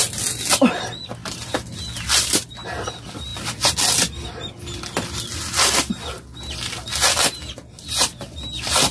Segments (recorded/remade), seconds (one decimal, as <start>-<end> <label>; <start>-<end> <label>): 0.0-8.9 recorded